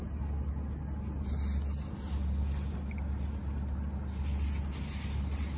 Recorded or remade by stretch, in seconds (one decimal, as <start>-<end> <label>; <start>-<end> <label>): 0.0-5.6 recorded